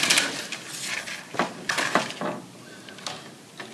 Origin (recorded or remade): recorded